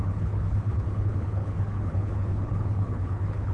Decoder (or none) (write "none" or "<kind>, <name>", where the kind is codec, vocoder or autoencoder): codec, HILCodec